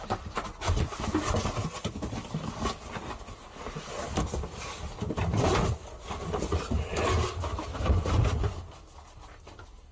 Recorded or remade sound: recorded